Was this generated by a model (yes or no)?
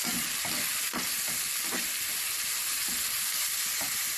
no